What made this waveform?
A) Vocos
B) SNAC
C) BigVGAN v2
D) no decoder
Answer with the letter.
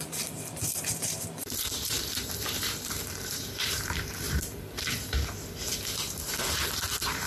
C